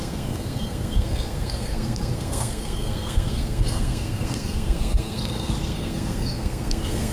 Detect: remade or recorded remade